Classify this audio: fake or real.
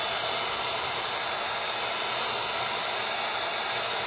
real